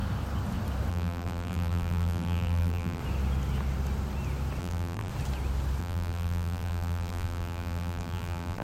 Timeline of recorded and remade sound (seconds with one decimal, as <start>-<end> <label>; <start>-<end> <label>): 0.0-0.9 recorded; 0.9-3.0 remade; 3.0-4.6 recorded; 4.6-5.1 remade; 5.1-5.8 recorded; 5.8-8.6 remade